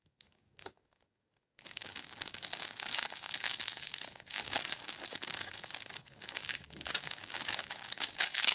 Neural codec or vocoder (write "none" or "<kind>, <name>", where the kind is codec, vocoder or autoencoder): codec, DAC